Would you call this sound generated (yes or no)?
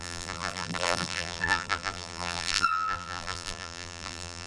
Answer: yes